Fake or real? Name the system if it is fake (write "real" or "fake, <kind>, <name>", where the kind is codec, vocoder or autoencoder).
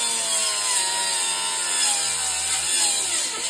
real